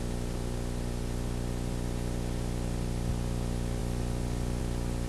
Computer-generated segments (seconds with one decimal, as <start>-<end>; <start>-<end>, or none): none